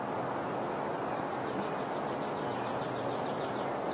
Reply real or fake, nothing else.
real